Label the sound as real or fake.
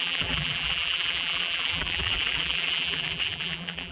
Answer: fake